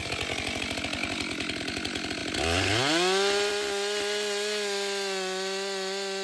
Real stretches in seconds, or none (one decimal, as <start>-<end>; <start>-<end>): 0.0-6.2